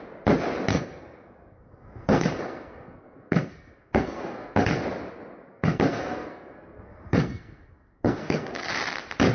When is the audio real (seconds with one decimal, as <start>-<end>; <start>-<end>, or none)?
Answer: 0.0-0.7; 4.8-5.5; 8.7-9.3